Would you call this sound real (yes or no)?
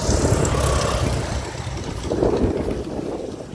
yes